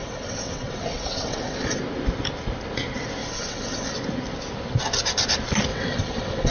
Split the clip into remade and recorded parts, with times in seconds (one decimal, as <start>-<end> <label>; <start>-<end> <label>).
0.0-1.8 remade; 1.8-3.2 recorded; 3.2-3.9 remade; 3.9-5.7 recorded; 5.7-6.5 remade